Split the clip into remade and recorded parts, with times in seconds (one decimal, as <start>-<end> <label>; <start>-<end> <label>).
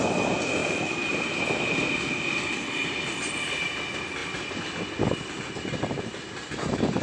0.0-0.6 recorded; 0.6-1.1 remade; 1.1-7.0 recorded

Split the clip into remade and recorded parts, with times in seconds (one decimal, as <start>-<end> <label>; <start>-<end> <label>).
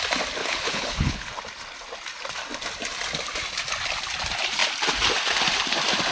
0.0-0.4 recorded; 0.4-1.3 remade; 1.3-6.1 recorded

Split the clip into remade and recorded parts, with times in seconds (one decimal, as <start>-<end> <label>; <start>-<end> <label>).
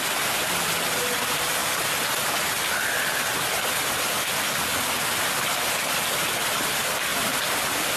0.0-8.0 recorded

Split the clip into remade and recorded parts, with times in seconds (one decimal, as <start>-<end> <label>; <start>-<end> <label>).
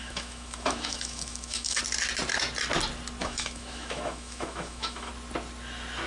0.0-1.8 remade; 1.8-3.2 recorded; 3.2-5.1 remade; 5.1-6.1 recorded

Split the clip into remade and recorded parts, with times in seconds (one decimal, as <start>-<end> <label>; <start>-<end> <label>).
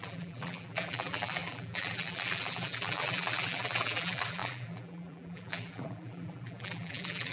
0.0-7.3 remade